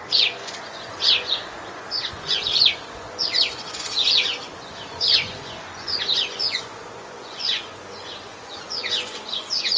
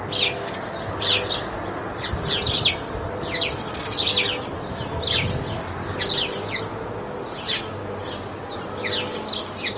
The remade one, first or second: first